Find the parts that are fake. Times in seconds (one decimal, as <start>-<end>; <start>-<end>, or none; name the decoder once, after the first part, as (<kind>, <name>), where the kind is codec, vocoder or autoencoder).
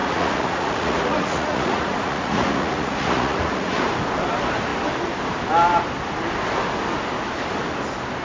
0.0-3.8 (vocoder, Vocos)